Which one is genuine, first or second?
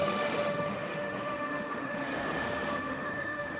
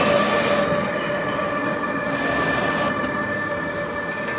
second